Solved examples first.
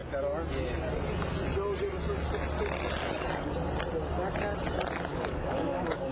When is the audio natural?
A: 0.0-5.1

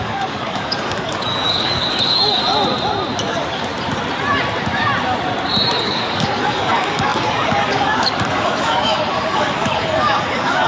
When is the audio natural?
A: 2.4-3.3; 3.7-5.8

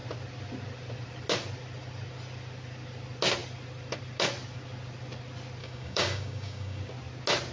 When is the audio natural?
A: 0.0-5.6; 6.8-7.5

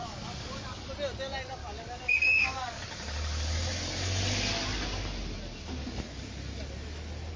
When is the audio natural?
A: 0.9-1.6; 2.8-5.8; 6.6-7.4

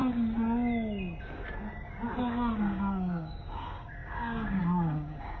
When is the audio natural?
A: 0.0-2.6

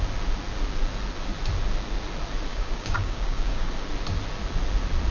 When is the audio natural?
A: 0.0-2.5; 3.7-5.1

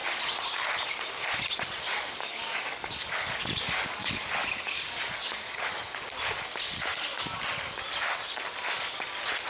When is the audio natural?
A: 0.0-1.9; 5.8-6.9; 7.8-9.5

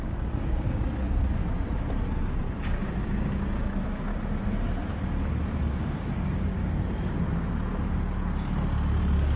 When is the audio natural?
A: 1.4-2.5; 4.1-5.7; 6.6-9.0